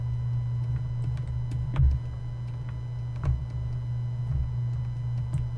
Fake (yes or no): no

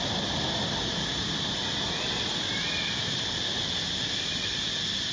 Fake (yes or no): no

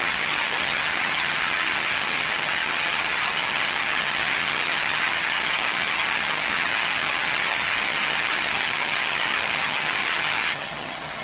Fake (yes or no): yes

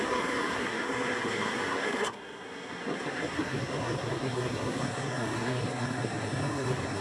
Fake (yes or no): yes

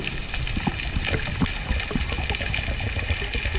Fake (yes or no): no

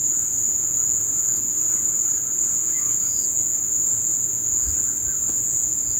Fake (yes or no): yes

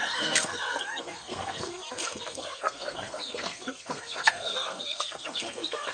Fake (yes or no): yes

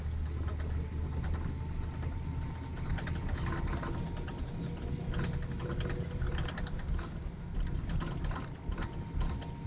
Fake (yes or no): no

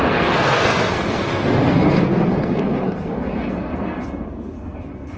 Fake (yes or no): yes